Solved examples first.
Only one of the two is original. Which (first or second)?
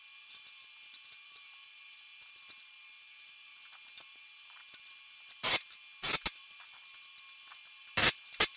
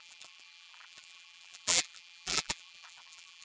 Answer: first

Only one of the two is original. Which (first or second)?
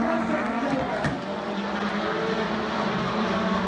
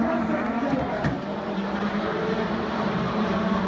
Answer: first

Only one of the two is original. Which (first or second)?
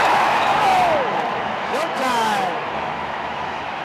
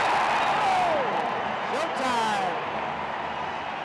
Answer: second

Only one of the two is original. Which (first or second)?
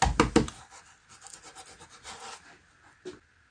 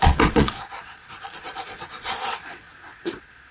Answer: first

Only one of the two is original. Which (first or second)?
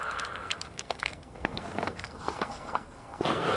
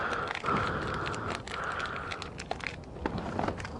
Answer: second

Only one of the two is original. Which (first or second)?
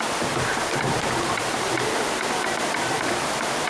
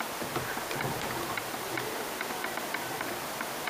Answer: second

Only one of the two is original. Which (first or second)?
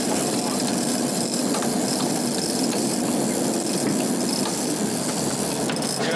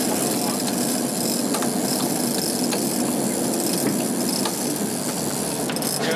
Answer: second